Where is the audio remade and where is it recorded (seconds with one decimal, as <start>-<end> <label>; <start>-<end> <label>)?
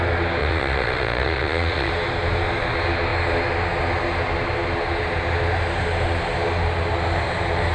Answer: 0.0-0.4 recorded; 0.4-1.9 remade; 1.9-7.7 recorded